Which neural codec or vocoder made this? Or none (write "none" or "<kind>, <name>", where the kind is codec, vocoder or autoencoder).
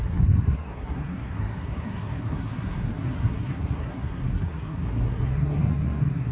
codec, SNAC